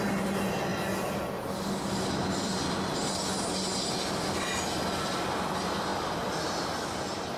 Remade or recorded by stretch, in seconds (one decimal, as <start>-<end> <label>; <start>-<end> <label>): 0.0-7.4 recorded